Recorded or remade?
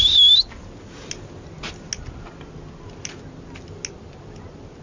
recorded